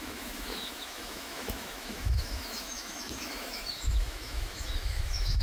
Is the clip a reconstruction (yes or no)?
yes